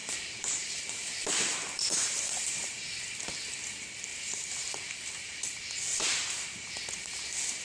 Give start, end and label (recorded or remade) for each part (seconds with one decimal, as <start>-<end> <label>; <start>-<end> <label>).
0.0-3.2 remade; 3.2-4.1 recorded; 4.1-5.0 remade; 5.0-5.9 recorded; 5.9-6.7 remade; 6.7-7.6 recorded